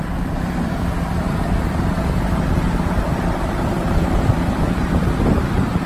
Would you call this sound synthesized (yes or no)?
yes